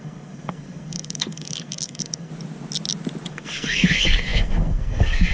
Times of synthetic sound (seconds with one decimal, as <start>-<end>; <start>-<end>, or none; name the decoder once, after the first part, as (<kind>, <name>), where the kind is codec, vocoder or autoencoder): 0.0-2.3 (codec, SNAC); 3.3-5.3